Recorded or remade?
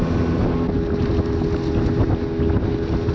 recorded